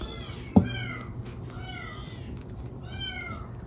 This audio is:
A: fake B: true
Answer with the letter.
B